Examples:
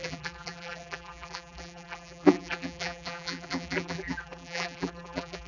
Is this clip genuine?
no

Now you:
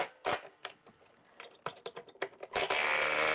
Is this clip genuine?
yes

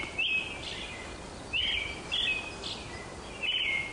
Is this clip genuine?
yes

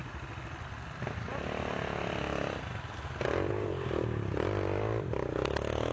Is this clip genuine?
yes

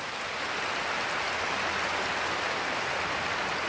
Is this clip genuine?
yes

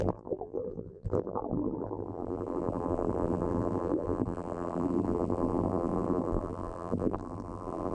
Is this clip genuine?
no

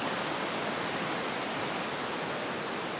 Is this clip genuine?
yes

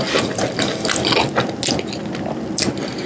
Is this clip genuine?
yes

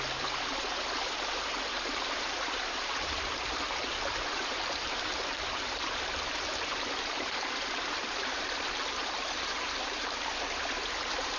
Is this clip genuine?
no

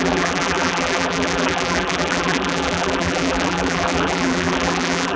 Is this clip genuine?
no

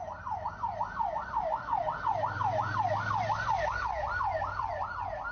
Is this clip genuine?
yes